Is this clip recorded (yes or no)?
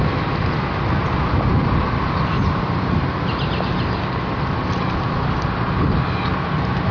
yes